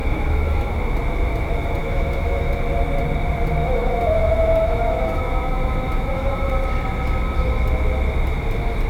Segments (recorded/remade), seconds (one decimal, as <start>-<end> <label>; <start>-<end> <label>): 0.0-0.7 remade; 0.7-1.8 recorded; 1.8-2.5 remade; 2.5-3.6 recorded; 3.6-6.5 remade; 6.5-8.9 recorded